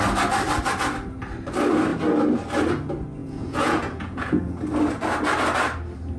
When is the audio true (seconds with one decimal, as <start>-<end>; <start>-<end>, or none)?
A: 0.0-3.2; 4.6-6.2

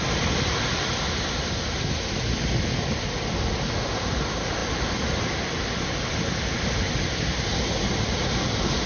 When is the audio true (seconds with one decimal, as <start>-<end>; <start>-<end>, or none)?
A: 0.0-8.9

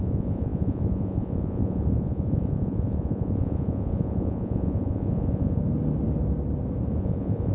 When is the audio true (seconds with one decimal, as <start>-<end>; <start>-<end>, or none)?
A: 5.6-6.9

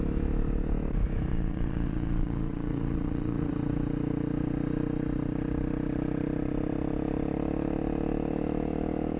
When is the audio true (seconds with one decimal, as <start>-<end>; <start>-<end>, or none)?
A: 0.0-1.3; 3.5-9.2